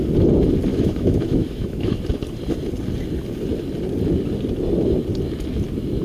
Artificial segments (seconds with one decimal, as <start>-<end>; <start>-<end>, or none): 0.7-2.0